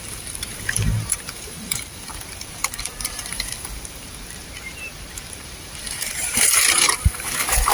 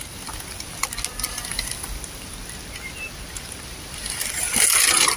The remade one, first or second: first